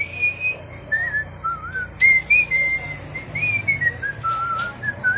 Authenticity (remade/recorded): recorded